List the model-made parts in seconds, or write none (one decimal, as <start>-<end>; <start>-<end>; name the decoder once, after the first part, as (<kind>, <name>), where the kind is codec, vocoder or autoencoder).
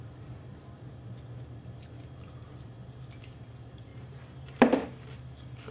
3.9-4.6 (vocoder, BigVGAN v2)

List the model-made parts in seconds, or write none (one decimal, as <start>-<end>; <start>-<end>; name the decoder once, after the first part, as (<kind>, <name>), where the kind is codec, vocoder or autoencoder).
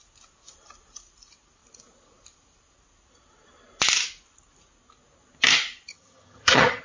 5.9-6.8 (vocoder, HiFi-GAN)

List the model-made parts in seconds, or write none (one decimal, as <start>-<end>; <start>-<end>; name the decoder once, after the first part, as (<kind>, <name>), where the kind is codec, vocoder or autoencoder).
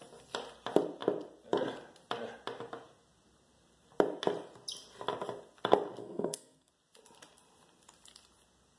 6.0-6.7 (codec, SNAC)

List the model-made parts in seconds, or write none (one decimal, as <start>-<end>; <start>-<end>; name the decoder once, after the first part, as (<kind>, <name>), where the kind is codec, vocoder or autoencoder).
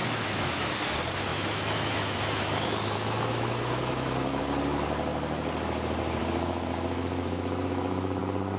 0.0-0.7 (autoencoder, DAC-VAE); 1.3-4.4; 6.2-8.2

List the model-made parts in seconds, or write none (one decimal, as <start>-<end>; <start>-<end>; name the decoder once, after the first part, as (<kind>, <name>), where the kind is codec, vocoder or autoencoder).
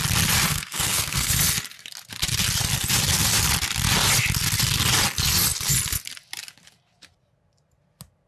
0.5-1.3 (codec, SNAC)